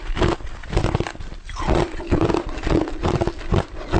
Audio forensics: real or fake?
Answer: real